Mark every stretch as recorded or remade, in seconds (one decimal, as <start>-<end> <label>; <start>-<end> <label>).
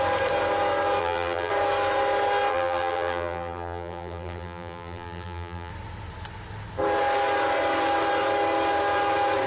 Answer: 0.0-1.0 recorded; 1.0-1.5 remade; 1.5-2.5 recorded; 2.5-5.7 remade; 5.7-9.5 recorded